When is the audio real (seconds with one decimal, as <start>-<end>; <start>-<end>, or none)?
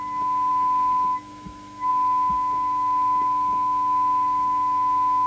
none